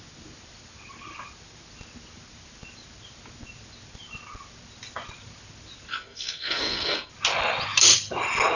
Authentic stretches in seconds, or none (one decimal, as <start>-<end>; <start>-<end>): 0.0-5.9; 7.1-8.6